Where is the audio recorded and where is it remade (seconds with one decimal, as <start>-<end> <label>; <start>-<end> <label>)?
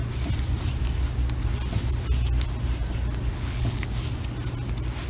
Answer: 0.0-3.3 recorded; 3.3-3.9 remade; 3.9-5.1 recorded